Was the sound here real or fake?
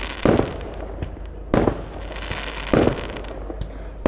real